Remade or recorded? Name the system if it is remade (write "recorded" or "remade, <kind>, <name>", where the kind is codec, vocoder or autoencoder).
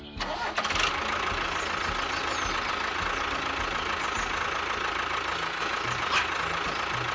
recorded